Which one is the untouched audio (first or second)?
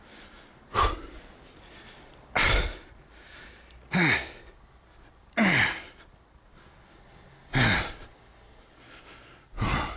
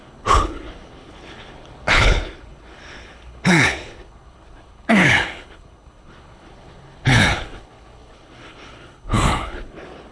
first